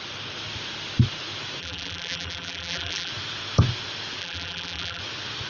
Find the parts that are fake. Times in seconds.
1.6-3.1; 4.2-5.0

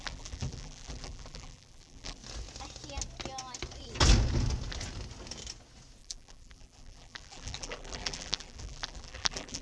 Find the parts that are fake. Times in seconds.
0.0-2.2; 6.0-9.6